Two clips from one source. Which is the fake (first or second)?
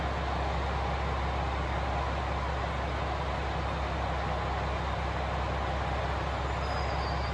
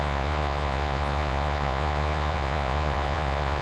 second